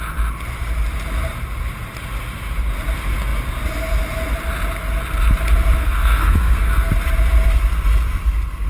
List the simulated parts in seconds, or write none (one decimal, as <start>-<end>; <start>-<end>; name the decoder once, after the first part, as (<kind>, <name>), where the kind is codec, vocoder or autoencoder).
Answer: 5.8-6.9 (codec, SNAC)